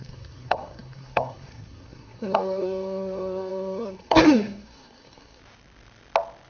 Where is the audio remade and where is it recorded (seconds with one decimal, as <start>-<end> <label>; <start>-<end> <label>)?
0.0-5.4 remade; 5.4-6.5 recorded